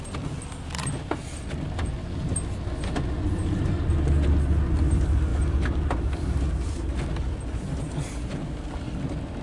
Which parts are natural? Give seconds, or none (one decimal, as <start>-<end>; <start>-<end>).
0.0-9.4